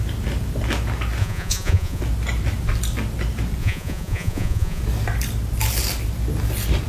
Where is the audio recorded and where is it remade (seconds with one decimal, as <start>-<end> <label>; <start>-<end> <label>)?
0.0-1.2 recorded; 1.2-2.0 remade; 2.0-3.6 recorded; 3.6-4.8 remade; 4.8-6.9 recorded